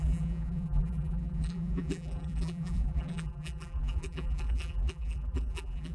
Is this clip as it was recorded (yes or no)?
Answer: no